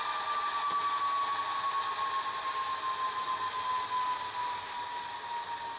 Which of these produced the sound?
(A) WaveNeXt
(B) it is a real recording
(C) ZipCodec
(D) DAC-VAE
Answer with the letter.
B